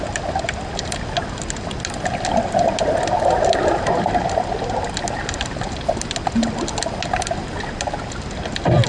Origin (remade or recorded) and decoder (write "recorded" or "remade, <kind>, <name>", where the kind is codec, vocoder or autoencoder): recorded